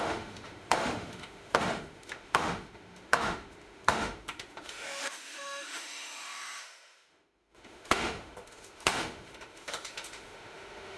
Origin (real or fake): fake